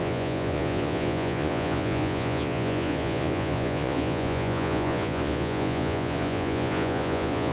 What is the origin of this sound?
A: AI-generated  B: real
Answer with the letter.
A